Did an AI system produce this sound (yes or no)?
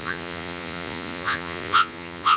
yes